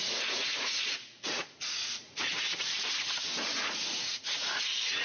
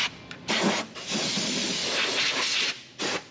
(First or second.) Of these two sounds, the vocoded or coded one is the first